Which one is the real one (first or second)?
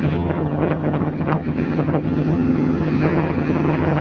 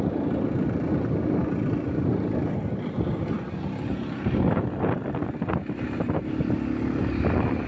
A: second